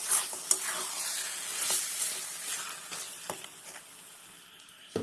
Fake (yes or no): no